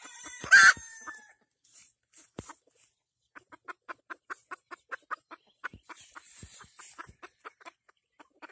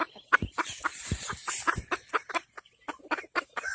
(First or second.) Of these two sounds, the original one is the second